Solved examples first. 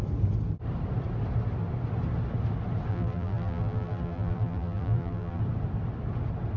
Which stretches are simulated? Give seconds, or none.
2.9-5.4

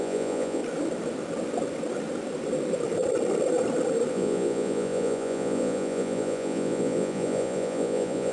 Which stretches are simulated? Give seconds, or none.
0.0-0.6; 4.1-8.3